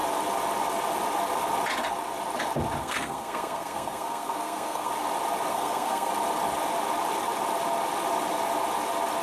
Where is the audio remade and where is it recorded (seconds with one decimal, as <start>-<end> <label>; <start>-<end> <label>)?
0.0-2.8 recorded; 2.8-4.9 remade; 4.9-5.5 recorded; 5.5-6.1 remade; 6.1-9.2 recorded